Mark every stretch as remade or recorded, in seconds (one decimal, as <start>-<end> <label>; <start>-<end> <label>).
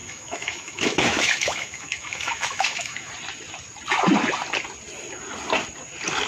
0.0-3.1 remade; 3.1-6.3 recorded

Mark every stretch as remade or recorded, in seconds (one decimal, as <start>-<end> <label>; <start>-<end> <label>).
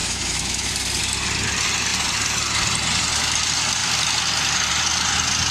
0.0-0.7 remade; 0.7-5.5 recorded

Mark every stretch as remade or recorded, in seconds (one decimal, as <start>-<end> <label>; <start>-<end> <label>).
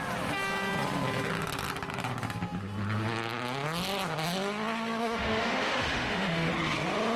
0.0-5.0 recorded; 5.0-6.5 remade; 6.5-7.2 recorded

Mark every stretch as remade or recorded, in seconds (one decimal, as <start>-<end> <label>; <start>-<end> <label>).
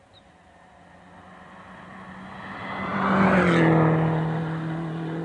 0.0-5.2 recorded